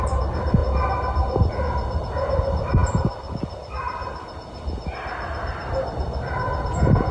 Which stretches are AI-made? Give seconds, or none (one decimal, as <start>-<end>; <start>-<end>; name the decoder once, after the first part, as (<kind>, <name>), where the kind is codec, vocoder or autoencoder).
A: 0.0-0.6 (vocoder, BigVGAN v2); 1.5-7.1

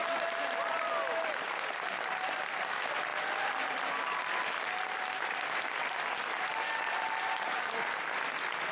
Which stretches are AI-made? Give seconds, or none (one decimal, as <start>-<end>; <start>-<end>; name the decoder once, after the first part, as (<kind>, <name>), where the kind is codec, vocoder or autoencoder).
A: none

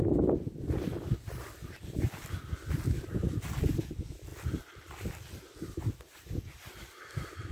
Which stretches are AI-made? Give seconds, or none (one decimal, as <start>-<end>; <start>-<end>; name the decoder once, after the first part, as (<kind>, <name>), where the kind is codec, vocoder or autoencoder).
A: none

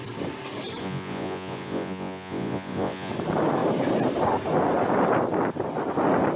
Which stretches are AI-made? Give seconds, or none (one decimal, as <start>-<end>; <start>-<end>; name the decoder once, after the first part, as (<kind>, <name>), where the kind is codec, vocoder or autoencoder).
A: 0.8-3.1 (vocoder, Vocos)

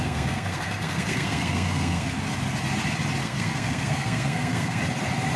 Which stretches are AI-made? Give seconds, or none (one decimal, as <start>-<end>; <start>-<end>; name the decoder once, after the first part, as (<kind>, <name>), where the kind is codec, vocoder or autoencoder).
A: 0.0-2.1 (codec, SNAC); 3.2-4.8